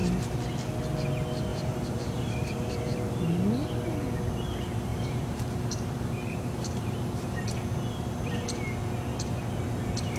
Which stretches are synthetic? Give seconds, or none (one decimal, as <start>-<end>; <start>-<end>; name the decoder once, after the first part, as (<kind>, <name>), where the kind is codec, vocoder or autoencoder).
1.5-3.2 (vocoder, BigVGAN v2); 4.9-7.4